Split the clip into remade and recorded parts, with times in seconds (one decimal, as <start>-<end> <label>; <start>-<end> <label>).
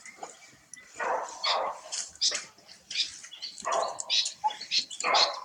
0.0-0.4 remade; 0.4-1.3 recorded; 1.3-3.2 remade; 3.2-4.7 recorded; 4.7-5.4 remade